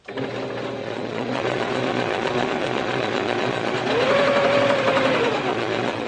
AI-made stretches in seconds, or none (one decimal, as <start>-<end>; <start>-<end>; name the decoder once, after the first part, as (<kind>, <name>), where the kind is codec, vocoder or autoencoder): 0.8-3.7 (vocoder, Vocos); 5.5-6.1